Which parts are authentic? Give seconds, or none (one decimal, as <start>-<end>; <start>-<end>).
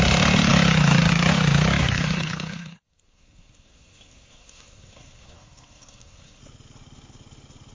0.0-1.8; 6.4-7.7